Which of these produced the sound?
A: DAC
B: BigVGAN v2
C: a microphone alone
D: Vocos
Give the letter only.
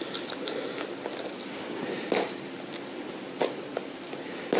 C